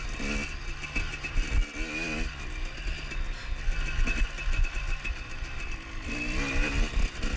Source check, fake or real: real